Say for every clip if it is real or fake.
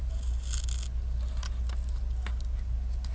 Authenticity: real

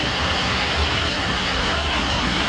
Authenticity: fake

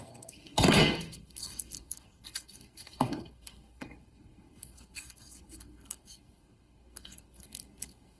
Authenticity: fake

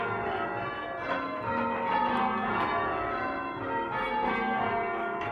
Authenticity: real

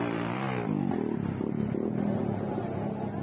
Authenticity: real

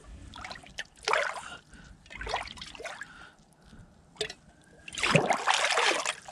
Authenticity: real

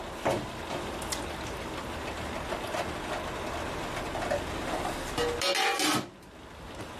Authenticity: real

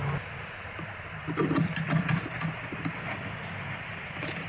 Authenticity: real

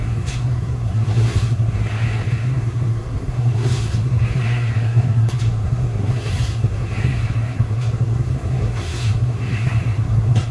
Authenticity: fake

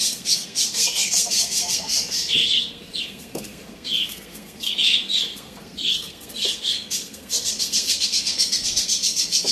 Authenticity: fake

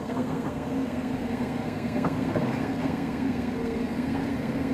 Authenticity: fake